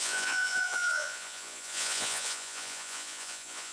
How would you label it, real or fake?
fake